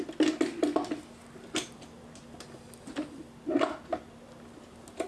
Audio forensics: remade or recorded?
recorded